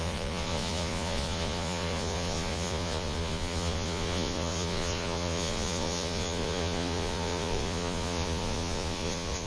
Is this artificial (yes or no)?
yes